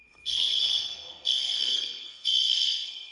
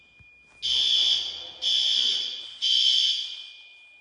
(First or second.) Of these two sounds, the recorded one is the second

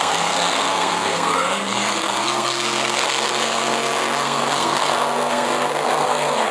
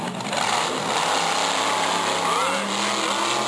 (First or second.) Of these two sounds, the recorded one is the second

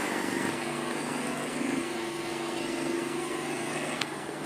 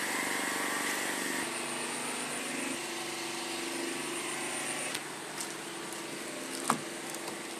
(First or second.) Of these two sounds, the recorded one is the second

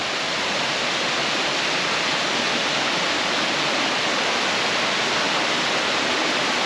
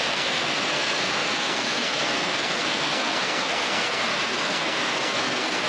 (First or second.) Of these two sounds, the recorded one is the first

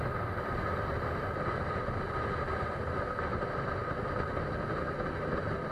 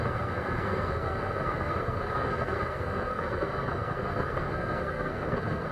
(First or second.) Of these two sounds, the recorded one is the first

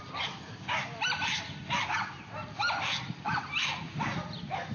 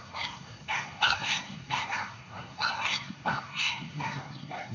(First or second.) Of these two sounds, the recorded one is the first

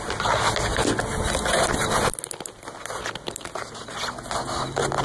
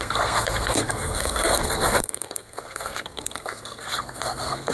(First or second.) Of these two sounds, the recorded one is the first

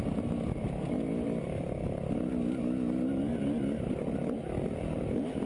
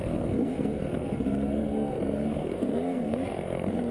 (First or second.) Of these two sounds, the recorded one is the first